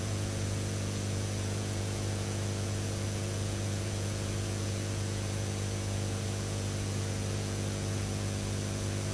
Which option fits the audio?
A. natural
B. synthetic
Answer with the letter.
B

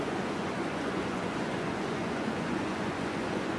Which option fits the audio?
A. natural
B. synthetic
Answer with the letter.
B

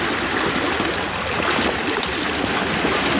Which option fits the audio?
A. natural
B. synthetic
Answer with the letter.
A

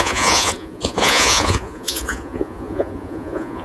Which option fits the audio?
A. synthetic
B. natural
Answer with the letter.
A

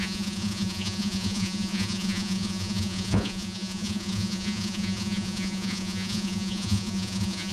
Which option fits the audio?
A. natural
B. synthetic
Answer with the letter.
B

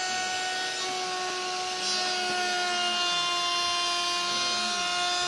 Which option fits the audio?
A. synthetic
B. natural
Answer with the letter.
B